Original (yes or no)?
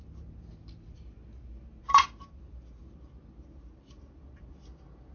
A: yes